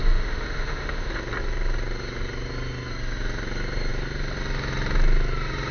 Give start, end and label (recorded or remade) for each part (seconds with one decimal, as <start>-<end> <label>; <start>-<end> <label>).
0.0-1.1 remade; 1.1-5.7 recorded